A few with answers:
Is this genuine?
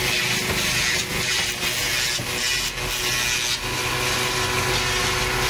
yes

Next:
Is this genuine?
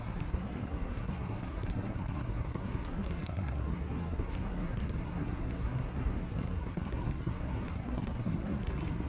no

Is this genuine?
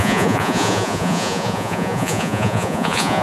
no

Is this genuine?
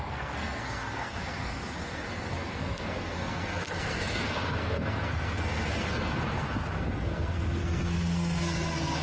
no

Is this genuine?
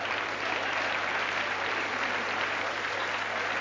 yes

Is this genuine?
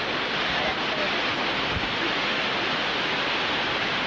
yes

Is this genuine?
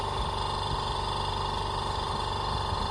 yes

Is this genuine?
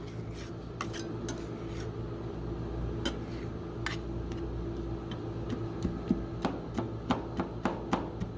yes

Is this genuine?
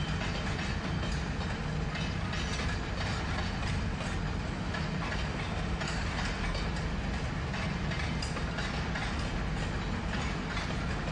yes